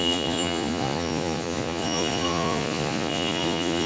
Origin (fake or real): fake